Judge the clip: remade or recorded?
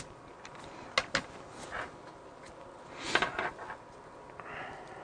recorded